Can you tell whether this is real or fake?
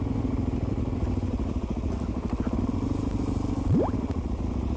real